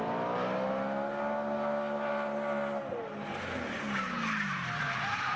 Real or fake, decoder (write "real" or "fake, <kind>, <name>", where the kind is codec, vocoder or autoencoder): real